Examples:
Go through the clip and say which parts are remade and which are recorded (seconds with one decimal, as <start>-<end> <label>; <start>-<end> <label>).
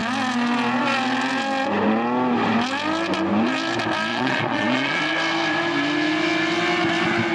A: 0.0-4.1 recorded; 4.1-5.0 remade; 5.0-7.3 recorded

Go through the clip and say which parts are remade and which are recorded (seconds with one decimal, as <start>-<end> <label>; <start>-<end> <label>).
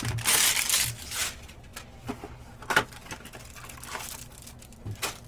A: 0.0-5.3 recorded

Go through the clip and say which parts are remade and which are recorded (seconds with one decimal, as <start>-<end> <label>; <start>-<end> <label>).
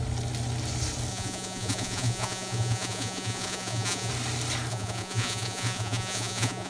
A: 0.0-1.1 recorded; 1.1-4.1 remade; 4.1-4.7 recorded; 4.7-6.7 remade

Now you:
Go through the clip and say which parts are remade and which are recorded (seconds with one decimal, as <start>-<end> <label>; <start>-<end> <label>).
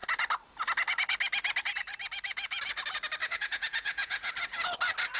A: 0.0-3.2 recorded; 3.2-4.3 remade; 4.3-5.2 recorded